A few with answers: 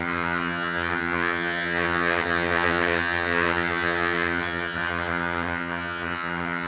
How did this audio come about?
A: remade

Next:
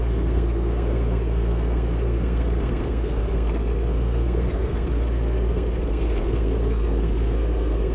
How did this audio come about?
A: remade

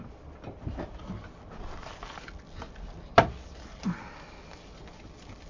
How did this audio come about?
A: recorded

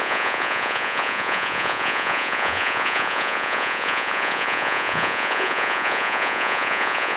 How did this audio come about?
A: remade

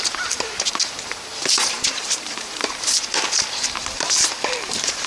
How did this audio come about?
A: remade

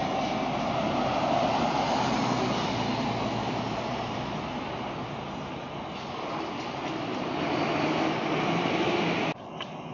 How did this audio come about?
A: recorded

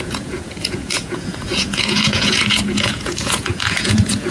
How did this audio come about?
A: remade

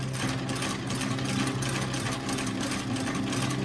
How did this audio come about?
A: recorded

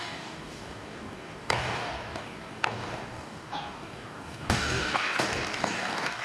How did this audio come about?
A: remade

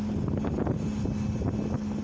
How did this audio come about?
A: recorded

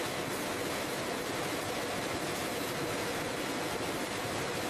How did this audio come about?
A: recorded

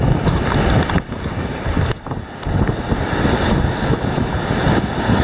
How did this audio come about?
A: recorded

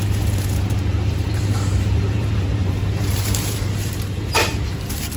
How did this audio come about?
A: remade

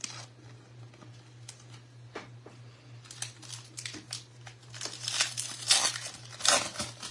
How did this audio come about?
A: recorded